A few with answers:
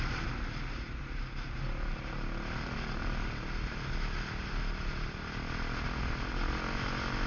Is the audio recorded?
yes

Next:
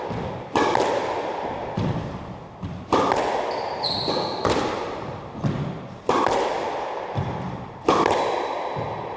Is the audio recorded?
yes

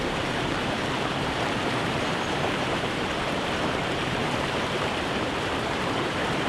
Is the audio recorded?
no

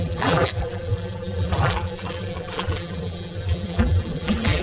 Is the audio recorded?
no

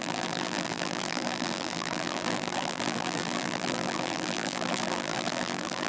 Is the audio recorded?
no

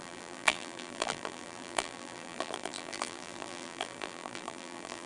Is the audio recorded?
no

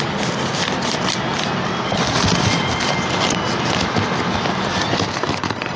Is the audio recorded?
yes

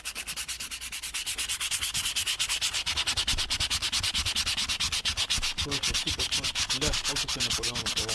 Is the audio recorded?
yes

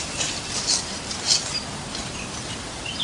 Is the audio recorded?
no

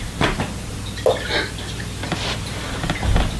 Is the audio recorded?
yes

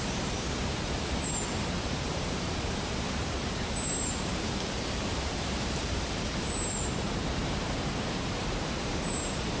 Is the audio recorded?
no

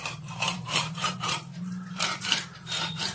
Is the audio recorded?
no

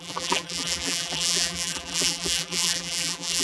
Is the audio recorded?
no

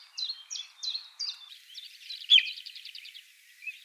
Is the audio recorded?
no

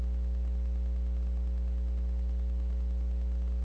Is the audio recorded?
yes